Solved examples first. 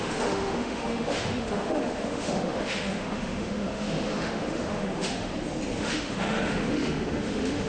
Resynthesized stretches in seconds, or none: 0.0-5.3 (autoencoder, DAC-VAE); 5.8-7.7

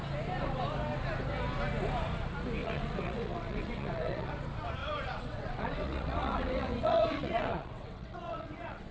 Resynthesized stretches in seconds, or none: 2.6-4.3 (vocoder, WaveNeXt); 4.8-8.9

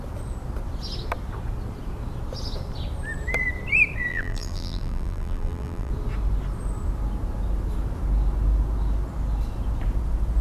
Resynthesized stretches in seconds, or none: 4.1-5.9 (vocoder, BigVGAN v2)

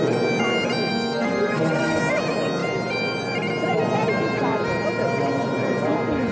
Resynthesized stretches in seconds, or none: 0.9-2.0 (codec, SNAC)

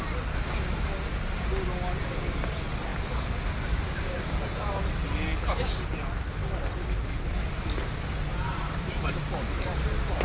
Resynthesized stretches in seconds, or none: none

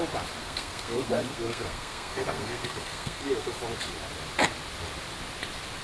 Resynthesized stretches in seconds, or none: 0.4-3.5 (codec, SNAC)

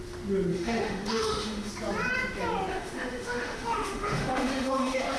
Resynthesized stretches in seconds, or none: 0.5-1.7 (autoencoder, DAC-VAE); 2.7-5.2